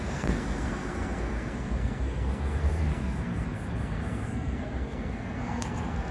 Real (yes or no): no